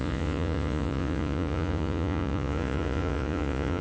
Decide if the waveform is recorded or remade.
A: remade